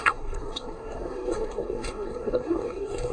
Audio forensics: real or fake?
fake